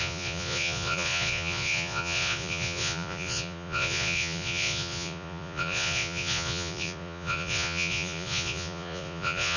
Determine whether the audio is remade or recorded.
remade